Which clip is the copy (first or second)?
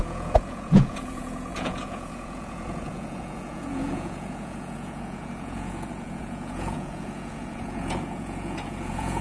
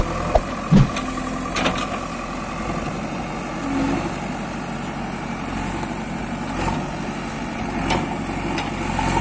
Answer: first